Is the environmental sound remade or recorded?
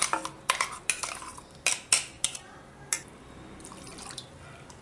recorded